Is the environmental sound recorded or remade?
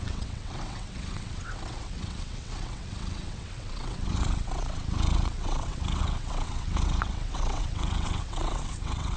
remade